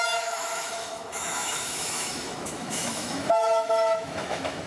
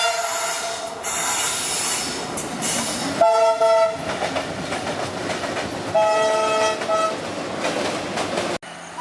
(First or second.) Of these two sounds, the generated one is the first